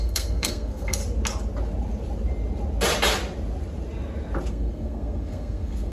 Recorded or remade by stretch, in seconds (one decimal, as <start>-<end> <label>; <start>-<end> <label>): 0.0-1.0 remade; 1.0-4.5 recorded; 4.5-5.9 remade